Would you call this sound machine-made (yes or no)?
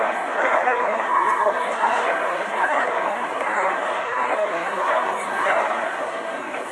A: yes